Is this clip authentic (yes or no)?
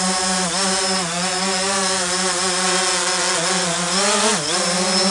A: yes